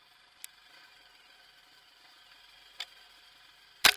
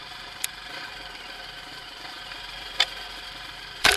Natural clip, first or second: first